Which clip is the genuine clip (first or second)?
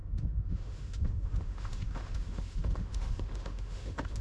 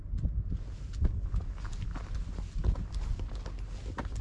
second